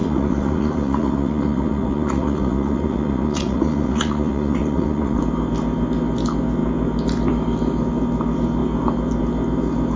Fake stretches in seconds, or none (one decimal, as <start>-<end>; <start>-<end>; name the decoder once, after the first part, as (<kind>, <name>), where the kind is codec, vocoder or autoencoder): 0.0-5.2 (vocoder, Vocos)